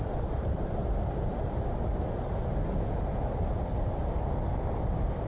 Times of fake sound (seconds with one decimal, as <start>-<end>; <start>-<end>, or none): 0.0-0.8; 3.6-5.3